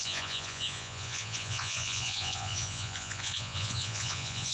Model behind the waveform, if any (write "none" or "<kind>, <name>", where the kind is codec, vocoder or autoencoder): vocoder, Vocos